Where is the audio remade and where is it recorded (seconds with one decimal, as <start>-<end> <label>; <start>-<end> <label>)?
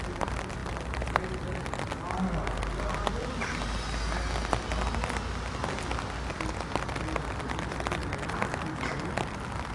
0.0-9.7 recorded